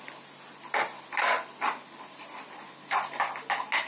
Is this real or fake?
real